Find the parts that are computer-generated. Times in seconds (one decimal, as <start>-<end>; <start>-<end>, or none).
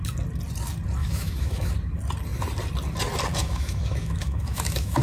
1.0-1.7; 3.4-5.0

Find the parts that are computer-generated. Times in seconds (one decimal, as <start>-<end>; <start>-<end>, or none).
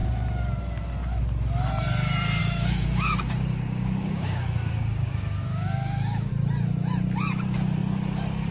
2.4-6.3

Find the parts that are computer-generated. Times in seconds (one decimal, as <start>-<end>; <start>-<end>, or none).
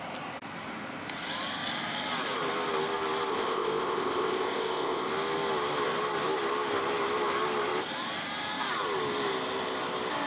3.3-5.1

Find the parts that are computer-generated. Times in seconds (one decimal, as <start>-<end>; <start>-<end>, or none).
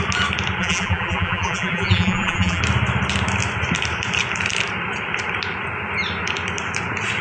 0.6-2.6